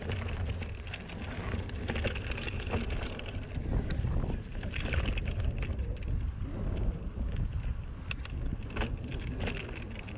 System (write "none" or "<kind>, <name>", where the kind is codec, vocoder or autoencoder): none